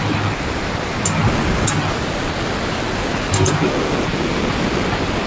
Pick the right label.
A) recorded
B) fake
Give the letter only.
A